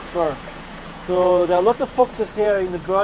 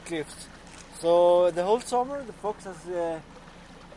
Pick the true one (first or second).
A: second